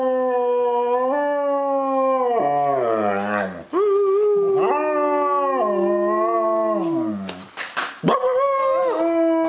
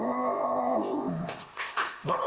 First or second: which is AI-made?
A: second